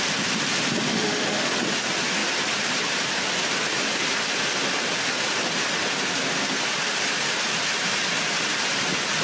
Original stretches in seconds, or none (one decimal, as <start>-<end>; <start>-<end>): 0.0-0.9; 1.5-9.2